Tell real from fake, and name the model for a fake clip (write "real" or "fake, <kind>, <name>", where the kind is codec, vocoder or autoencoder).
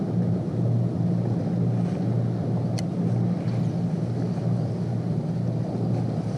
real